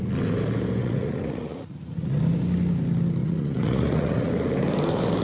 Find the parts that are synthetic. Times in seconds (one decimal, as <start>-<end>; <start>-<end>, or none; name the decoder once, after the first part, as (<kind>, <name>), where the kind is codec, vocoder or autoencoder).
0.8-2.2 (vocoder, Vocos); 3.2-4.3